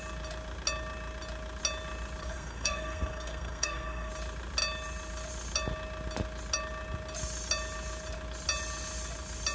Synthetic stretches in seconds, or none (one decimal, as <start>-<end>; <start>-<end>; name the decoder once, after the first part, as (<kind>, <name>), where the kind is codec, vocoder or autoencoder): 2.2-4.1 (codec, SNAC)